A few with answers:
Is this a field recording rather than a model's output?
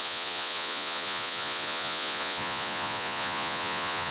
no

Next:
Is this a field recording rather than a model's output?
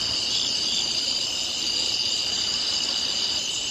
no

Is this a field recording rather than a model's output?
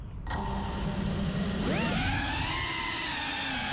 yes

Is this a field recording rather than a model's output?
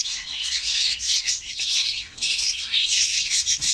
no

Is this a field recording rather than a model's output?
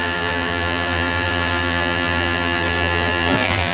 no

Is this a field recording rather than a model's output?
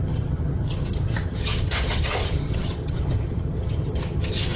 no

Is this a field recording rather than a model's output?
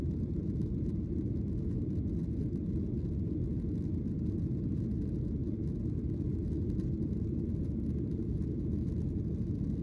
yes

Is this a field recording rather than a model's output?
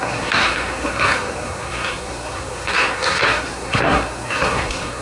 no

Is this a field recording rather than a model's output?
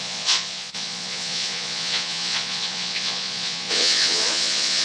no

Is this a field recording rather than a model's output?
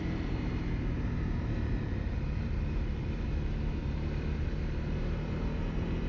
no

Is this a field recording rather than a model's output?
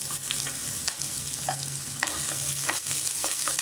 no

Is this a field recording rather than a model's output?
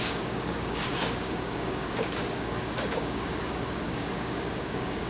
no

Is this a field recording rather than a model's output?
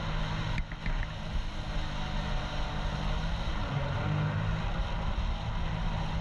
yes